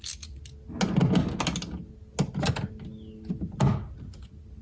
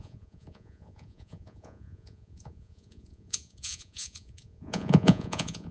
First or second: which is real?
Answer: first